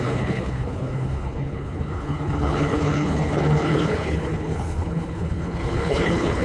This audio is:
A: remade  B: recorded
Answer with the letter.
A